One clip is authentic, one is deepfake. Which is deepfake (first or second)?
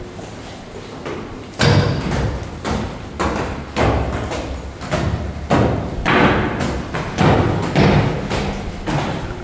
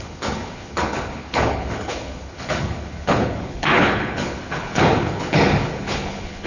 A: second